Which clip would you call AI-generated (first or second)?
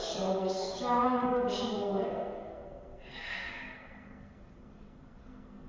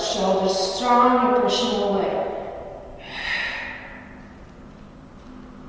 first